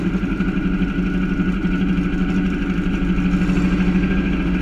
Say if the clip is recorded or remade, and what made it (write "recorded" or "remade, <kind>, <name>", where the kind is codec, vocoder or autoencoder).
recorded